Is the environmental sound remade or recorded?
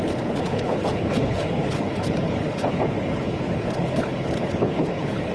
remade